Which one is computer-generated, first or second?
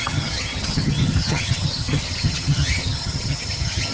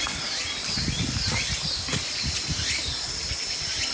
first